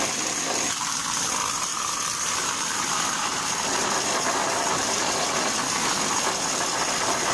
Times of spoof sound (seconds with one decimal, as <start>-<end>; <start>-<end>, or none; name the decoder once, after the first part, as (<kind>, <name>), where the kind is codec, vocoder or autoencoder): 1.7-3.9 (vocoder, BigVGAN v2); 4.4-5.1